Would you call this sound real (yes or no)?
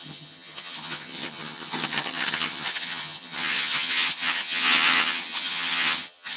no